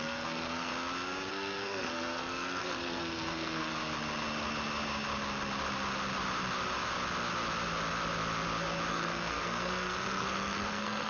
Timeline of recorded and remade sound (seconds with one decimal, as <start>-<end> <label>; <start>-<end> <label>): 0.0-0.7 remade; 0.7-1.3 recorded; 1.3-3.7 remade; 3.7-8.9 recorded; 8.9-11.1 remade

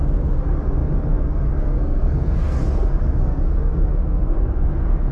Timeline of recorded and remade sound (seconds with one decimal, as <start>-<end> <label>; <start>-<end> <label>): 0.0-5.1 remade

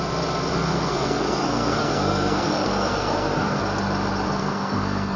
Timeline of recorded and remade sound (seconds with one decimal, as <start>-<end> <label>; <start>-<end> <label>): 0.0-0.7 recorded; 0.7-3.6 remade; 3.6-4.4 recorded; 4.4-5.2 remade

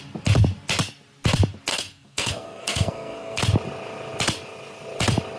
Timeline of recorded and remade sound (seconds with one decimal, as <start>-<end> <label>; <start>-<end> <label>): 0.0-1.7 recorded; 1.7-3.4 remade; 3.4-5.4 recorded

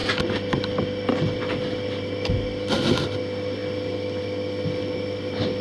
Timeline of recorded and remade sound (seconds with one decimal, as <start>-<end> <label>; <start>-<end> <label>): 0.0-5.6 recorded

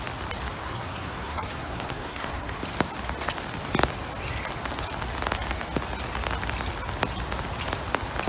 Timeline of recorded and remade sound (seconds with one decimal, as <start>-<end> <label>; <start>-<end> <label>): 0.0-0.6 recorded; 0.6-2.6 remade; 2.6-8.3 recorded